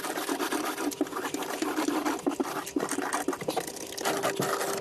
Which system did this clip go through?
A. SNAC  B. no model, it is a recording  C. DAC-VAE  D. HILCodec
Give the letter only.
B